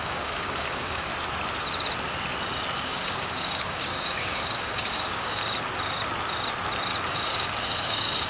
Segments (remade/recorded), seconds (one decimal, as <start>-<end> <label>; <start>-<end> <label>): 0.0-1.1 remade; 1.1-2.8 recorded; 2.8-5.4 remade; 5.4-7.1 recorded; 7.1-8.3 remade